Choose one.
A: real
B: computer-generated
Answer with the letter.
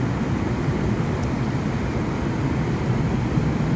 A